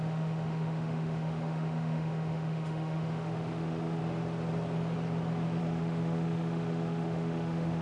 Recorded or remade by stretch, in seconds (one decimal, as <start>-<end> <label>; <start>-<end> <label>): 0.0-4.0 remade; 4.0-5.6 recorded; 5.6-7.8 remade